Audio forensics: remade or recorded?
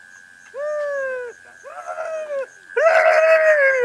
recorded